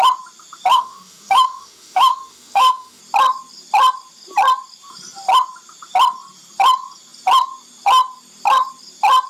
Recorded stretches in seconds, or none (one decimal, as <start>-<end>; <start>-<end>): 0.0-0.7; 3.0-9.3